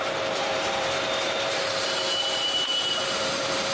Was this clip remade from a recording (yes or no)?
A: yes